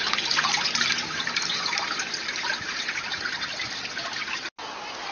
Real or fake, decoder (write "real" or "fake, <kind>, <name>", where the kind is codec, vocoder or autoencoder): real